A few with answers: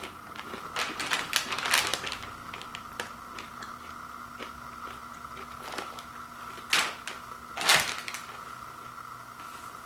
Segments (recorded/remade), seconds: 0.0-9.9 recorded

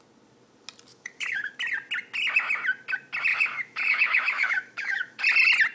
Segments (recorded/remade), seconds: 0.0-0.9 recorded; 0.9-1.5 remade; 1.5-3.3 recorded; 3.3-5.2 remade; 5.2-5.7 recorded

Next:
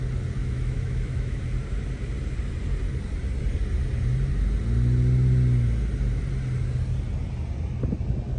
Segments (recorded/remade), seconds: 0.0-0.4 recorded; 0.4-1.4 remade; 1.4-8.4 recorded